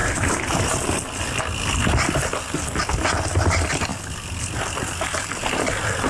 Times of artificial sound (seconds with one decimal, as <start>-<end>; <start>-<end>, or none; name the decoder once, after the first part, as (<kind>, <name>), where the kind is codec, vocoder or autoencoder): none